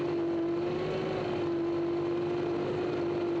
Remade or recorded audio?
recorded